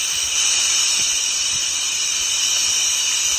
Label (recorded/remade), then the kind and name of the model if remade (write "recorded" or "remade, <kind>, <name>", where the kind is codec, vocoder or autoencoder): recorded